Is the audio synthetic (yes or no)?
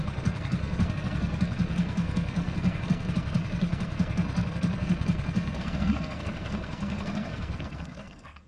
yes